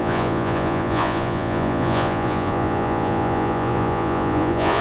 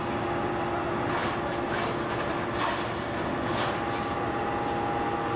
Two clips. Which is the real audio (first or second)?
second